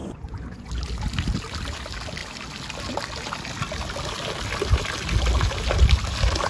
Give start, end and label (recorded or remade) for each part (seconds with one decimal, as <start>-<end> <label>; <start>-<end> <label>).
0.0-0.7 remade; 0.7-6.5 recorded